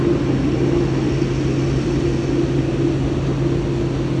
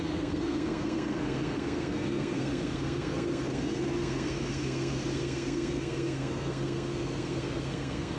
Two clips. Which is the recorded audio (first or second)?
first